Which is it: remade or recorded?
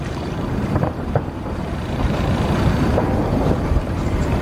remade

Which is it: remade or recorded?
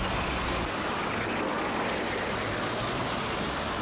recorded